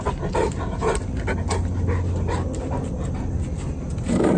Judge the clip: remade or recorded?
recorded